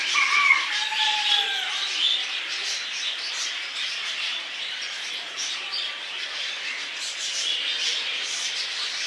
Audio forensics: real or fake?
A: real